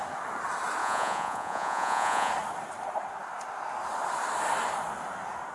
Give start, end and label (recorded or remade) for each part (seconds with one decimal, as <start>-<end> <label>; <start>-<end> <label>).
0.0-0.8 recorded; 0.8-2.3 remade; 2.3-5.5 recorded